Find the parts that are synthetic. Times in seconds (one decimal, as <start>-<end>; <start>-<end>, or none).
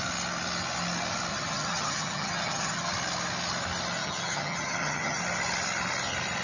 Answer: 1.3-2.9; 4.0-5.2